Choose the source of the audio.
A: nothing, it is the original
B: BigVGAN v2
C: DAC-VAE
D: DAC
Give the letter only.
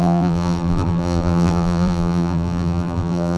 B